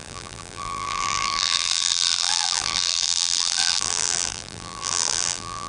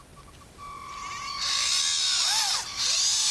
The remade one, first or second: first